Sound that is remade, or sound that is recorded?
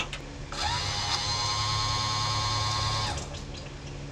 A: recorded